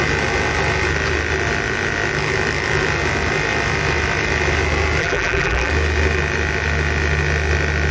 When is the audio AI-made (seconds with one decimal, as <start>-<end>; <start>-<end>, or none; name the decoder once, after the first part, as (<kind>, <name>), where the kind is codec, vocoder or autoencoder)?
5.0-5.7 (vocoder, BigVGAN v2)